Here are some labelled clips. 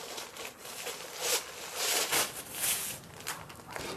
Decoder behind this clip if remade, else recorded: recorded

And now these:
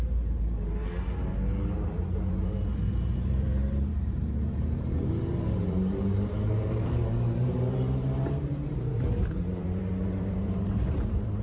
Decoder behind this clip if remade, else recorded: remade, vocoder, BigVGAN v2